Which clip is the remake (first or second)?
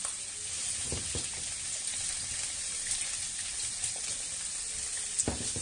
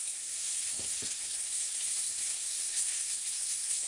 second